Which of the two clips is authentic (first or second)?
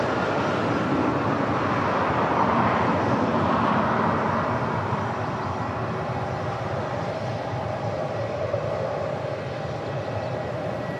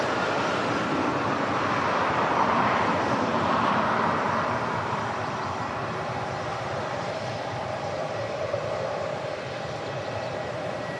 first